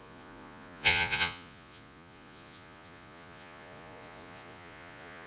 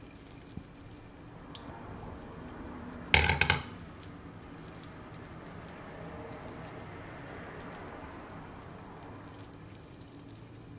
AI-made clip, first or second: first